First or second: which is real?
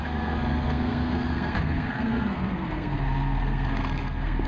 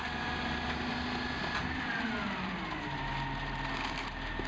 second